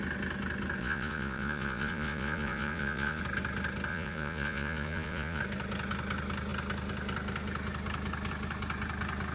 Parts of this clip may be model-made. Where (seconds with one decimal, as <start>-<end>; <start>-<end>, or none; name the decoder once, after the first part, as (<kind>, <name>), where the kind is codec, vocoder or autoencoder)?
0.8-3.2 (vocoder, Vocos); 3.9-5.4